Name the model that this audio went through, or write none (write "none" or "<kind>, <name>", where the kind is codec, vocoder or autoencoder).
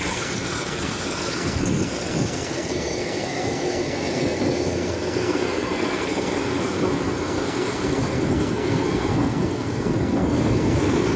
codec, SNAC